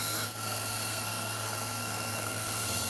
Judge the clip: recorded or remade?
remade